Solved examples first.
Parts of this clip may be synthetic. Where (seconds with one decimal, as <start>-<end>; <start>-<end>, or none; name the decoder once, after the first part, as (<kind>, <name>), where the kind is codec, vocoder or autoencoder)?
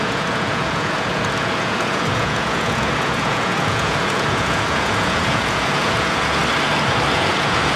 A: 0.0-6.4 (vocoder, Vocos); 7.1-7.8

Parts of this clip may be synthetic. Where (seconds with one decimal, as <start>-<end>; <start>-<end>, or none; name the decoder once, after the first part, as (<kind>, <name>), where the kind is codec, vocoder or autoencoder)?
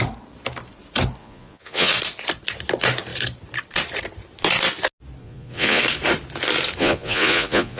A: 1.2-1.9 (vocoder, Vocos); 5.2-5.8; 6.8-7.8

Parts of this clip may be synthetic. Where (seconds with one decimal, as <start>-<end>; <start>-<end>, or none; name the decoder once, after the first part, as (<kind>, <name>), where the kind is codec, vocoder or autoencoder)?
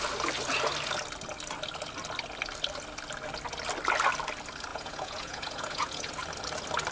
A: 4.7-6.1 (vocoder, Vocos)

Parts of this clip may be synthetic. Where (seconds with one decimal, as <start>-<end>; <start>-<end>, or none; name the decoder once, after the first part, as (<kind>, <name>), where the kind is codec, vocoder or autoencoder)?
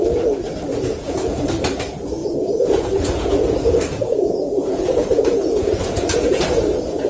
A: 0.7-1.4 (vocoder, Vocos); 2.2-6.5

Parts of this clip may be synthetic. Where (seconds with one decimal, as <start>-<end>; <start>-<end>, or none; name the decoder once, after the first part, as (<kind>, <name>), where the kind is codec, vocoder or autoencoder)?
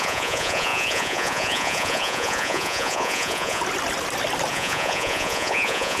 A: 0.0-3.6 (vocoder, Vocos); 4.5-6.0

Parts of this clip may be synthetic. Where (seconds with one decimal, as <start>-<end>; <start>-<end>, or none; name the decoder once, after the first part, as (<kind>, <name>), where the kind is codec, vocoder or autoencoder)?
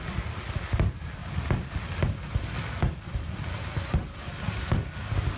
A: none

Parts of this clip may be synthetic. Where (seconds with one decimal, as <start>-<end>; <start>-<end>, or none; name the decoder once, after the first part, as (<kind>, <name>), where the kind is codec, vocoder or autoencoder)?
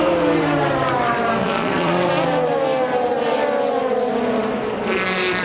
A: 1.4-2.1 (vocoder, Vocos)